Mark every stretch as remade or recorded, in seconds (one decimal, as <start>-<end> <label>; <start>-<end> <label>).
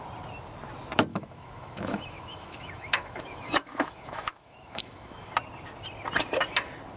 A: 0.0-1.1 recorded; 1.1-5.3 remade; 5.3-7.0 recorded